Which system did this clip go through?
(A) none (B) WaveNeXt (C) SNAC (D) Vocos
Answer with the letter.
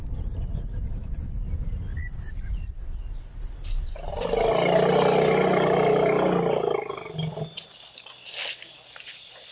A